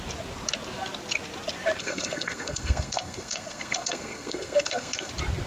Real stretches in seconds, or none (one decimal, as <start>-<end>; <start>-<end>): 0.0-1.8; 5.1-5.5